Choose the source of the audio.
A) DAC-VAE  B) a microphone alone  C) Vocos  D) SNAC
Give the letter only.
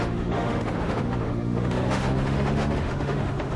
A